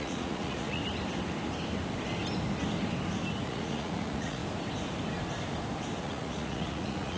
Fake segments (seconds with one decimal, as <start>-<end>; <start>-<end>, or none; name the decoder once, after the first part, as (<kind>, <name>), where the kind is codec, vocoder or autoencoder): 0.0-0.8 (vocoder, Vocos); 3.4-4.4; 6.0-7.2